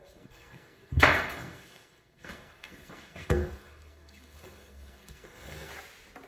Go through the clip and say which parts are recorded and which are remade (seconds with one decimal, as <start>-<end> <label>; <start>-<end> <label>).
0.0-5.7 remade; 5.7-6.3 recorded